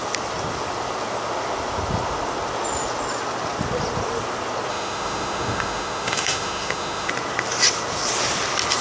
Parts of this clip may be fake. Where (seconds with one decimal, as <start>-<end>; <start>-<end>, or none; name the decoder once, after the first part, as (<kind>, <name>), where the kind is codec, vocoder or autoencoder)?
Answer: 4.7-7.1 (autoencoder, DAC-VAE)

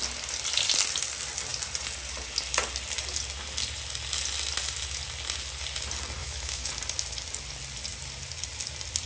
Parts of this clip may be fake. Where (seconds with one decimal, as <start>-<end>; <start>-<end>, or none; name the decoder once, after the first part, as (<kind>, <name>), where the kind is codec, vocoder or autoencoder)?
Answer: 6.2-6.7 (autoencoder, DAC-VAE)